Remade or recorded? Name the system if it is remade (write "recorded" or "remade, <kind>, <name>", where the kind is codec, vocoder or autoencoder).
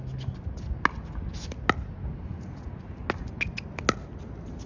recorded